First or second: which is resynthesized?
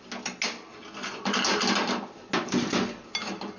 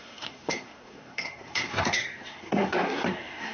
second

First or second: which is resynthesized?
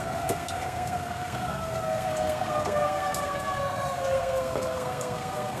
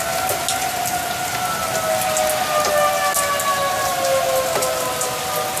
first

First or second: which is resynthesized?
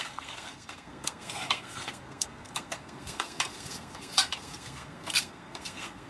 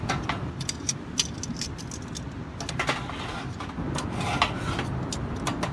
first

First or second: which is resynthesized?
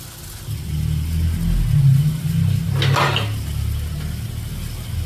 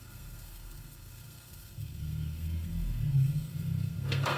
second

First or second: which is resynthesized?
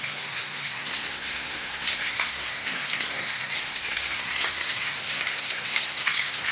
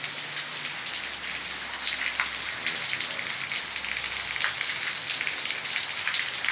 first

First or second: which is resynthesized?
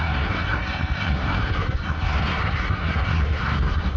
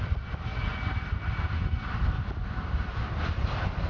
first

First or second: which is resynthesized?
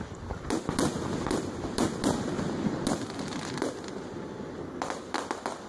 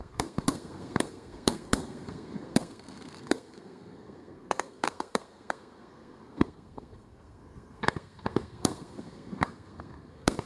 second